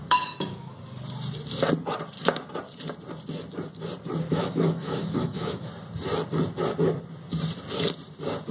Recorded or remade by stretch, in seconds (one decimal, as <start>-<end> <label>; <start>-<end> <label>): 0.0-0.8 remade; 0.8-4.3 recorded; 4.3-5.7 remade; 5.7-8.5 recorded